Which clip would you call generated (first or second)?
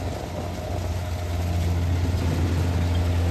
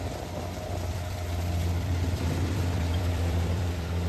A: second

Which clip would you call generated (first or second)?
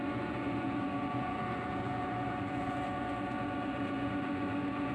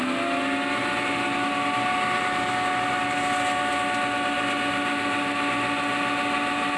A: first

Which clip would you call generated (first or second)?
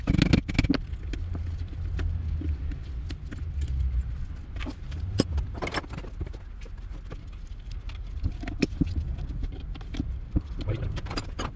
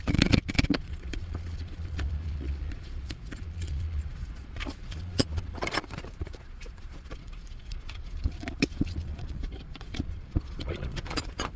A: second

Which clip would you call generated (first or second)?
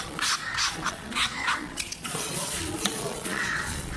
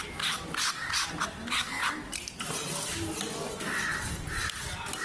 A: first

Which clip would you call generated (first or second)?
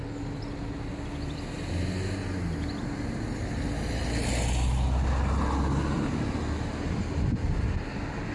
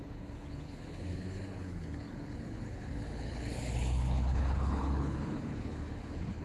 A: second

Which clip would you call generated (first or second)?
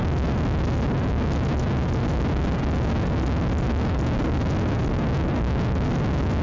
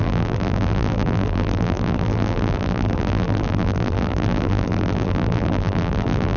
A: second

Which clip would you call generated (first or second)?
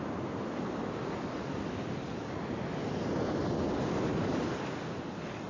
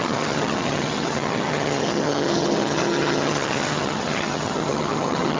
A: second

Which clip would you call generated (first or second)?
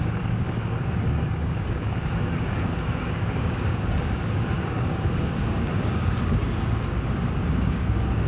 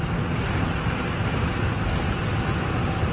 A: first